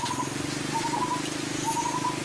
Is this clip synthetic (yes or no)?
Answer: no